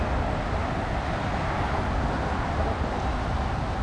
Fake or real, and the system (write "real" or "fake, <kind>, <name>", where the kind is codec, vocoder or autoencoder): real